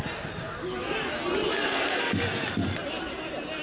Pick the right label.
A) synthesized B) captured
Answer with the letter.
B